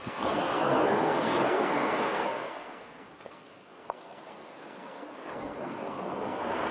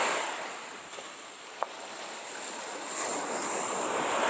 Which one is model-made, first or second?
first